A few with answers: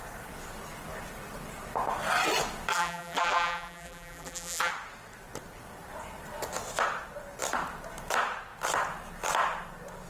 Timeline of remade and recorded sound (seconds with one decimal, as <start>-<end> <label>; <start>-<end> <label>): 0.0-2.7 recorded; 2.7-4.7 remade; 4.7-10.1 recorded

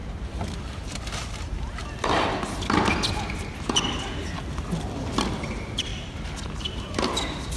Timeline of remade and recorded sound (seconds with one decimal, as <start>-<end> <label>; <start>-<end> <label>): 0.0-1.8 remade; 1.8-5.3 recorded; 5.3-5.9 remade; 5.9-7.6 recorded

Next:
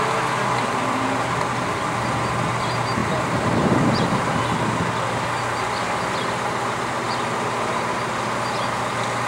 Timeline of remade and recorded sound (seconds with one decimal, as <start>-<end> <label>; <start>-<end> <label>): 0.0-3.0 recorded; 3.0-4.4 remade; 4.4-9.3 recorded

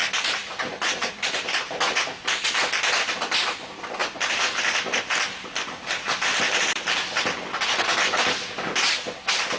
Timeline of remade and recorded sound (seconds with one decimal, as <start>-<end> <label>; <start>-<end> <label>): 0.0-1.8 remade; 1.8-4.0 recorded; 4.0-6.4 remade; 6.4-9.6 recorded